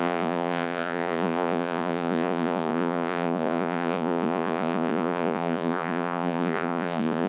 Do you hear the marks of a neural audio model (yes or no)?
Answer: yes